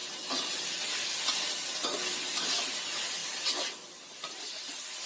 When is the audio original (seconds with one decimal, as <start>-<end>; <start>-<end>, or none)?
0.0-3.2